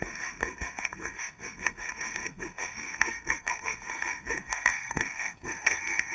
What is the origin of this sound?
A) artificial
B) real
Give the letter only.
A